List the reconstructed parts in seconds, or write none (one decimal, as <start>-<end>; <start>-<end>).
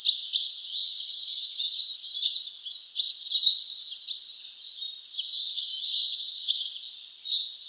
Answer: 0.9-1.6; 5.7-6.9